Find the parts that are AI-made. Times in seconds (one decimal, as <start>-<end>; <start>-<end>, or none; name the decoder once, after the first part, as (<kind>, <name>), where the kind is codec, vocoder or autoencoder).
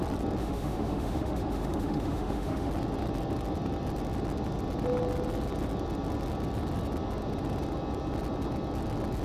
0.4-2.7 (autoencoder, DAC-VAE)